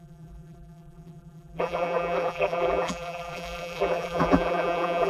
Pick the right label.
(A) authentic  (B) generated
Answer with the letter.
B